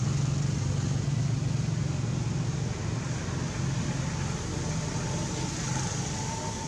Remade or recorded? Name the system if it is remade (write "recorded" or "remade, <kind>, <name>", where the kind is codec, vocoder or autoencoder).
recorded